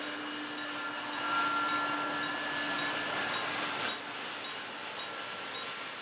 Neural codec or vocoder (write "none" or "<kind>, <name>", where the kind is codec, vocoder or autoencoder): none